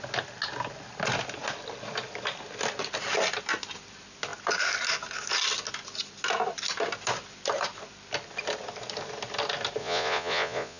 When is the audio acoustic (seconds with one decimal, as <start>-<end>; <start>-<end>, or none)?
0.0-9.8